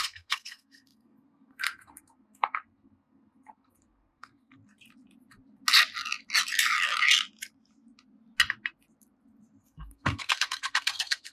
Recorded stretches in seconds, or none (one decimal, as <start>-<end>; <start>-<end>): 4.6-9.6